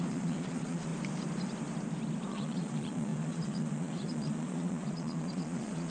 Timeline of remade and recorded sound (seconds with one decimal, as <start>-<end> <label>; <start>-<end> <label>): 0.0-0.9 remade; 0.9-2.3 recorded; 2.3-5.9 remade